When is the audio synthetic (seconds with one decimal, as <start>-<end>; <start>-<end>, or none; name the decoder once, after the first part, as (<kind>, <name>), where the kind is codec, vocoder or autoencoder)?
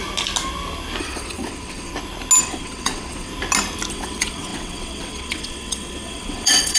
1.0-1.9 (vocoder, WaveNeXt); 2.4-3.3; 3.9-6.8